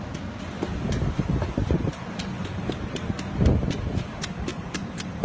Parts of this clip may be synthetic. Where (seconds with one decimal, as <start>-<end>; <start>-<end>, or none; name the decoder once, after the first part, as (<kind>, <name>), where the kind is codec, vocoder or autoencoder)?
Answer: 1.6-2.2 (vocoder, BigVGAN v2); 4.5-5.2